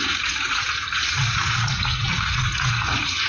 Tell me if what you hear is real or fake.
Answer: fake